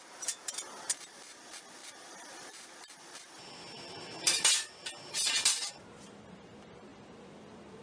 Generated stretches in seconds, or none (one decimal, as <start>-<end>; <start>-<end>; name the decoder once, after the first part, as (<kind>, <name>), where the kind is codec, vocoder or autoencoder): none